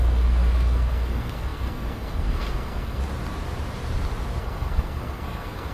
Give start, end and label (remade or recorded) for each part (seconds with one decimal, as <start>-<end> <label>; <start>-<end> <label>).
0.0-3.0 remade; 3.0-4.4 recorded; 4.4-5.7 remade